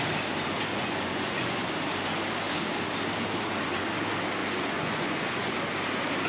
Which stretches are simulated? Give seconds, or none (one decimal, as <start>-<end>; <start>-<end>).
0.7-1.7; 4.4-5.5